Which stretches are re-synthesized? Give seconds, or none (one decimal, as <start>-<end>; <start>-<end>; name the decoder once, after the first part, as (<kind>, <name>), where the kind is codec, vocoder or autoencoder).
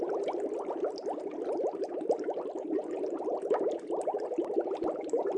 none